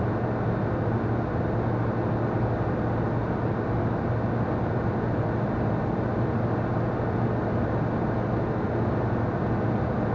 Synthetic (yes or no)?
no